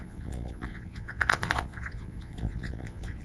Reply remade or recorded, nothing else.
remade